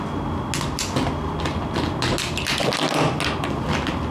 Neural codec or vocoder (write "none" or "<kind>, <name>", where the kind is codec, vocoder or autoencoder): none